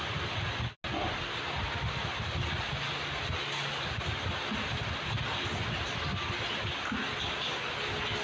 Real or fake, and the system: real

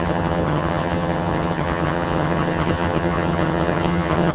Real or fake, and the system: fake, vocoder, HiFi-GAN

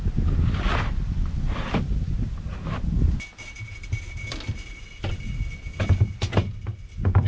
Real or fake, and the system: real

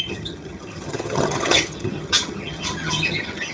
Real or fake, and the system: fake, vocoder, HiFi-GAN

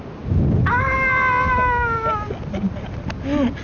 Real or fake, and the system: real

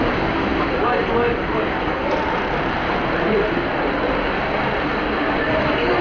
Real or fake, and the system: real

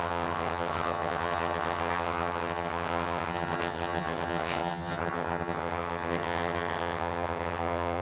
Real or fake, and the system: fake, vocoder, HiFi-GAN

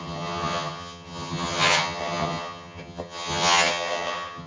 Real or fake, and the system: fake, vocoder, HiFi-GAN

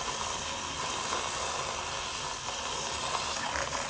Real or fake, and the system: real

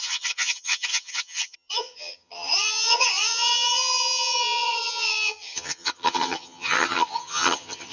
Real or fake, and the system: fake, vocoder, HiFi-GAN